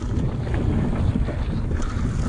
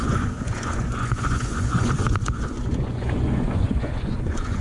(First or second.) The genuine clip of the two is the first